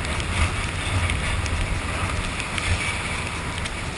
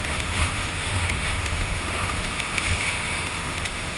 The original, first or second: first